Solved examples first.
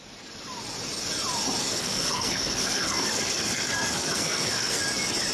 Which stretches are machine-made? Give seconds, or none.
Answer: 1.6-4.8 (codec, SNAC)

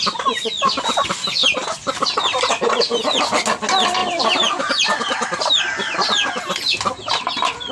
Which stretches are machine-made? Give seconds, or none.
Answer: 1.4-2.5 (vocoder, BigVGAN v2); 4.0-4.8